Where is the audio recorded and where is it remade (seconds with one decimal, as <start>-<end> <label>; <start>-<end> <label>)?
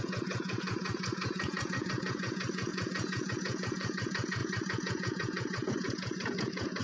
0.0-6.8 remade